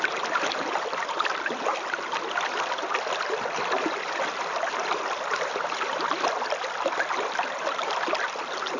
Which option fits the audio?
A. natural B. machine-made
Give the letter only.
A